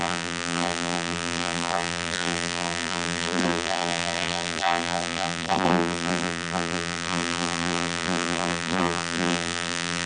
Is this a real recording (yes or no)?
no